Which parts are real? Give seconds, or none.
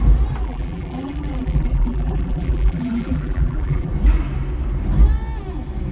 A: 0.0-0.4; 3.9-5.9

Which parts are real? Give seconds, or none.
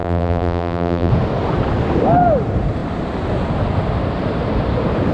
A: 1.1-5.1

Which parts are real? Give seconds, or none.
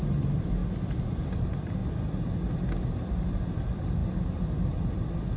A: 1.8-2.9; 4.0-4.5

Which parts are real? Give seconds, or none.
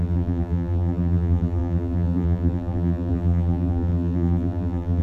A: none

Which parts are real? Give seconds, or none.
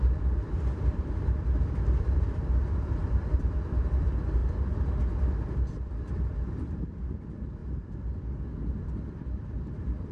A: 4.4-5.5; 7.6-8.8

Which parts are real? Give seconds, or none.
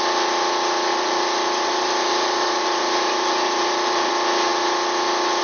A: 0.0-0.9; 4.1-5.4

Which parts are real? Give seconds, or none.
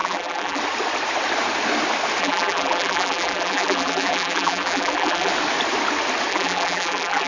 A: 0.6-2.2; 5.3-6.3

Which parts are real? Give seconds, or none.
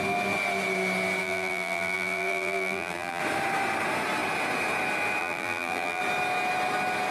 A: 0.0-1.2; 3.2-5.2; 6.0-7.1